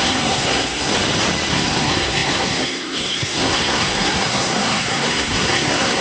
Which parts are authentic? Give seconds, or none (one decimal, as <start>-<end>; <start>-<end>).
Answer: 0.9-1.5